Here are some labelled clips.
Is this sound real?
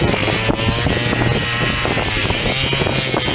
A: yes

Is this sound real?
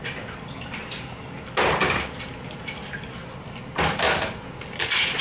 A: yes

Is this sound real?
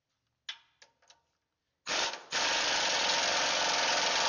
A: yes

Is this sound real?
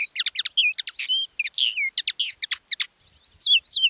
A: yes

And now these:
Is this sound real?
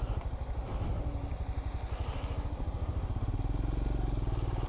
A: yes